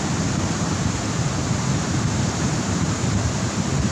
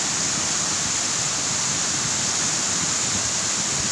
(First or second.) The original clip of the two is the second